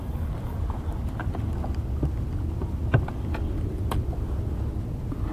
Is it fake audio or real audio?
real